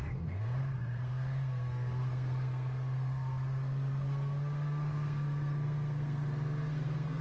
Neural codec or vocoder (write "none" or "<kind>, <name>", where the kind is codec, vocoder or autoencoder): codec, SNAC